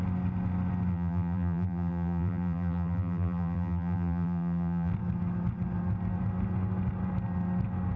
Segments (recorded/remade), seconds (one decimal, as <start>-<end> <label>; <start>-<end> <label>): 0.0-0.9 recorded; 0.9-4.9 remade; 4.9-8.0 recorded